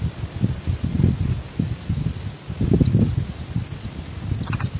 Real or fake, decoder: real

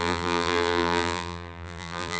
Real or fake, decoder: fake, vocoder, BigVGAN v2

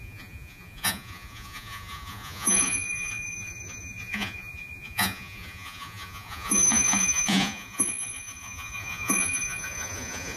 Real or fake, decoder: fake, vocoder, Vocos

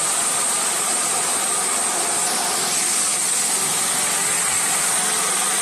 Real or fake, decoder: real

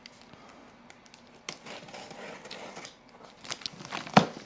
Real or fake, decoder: real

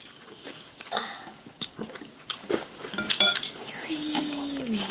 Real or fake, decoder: fake, codec, DAC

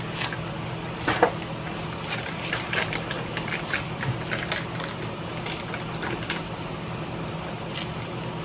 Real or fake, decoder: real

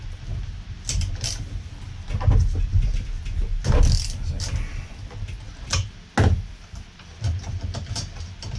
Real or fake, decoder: real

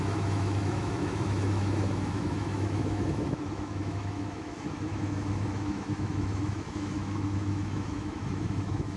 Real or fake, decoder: fake, autoencoder, DAC-VAE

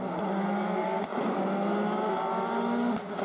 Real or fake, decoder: real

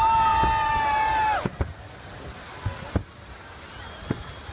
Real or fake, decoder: real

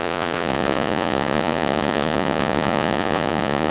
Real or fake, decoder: fake, vocoder, Vocos